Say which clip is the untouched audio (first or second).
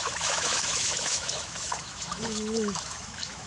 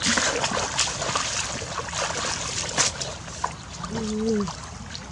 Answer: second